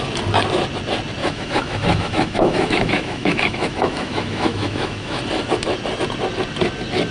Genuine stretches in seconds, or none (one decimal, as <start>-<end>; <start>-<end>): 0.0-1.2; 5.2-7.1